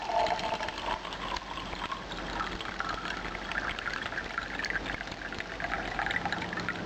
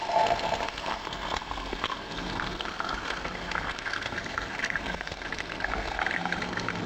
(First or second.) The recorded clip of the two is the first